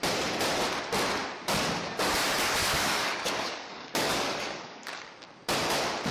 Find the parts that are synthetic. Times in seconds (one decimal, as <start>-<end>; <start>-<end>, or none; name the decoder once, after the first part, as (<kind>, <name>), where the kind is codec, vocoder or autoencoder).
2.6-5.0 (codec, DAC)